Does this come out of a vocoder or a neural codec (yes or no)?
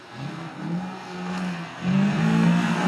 yes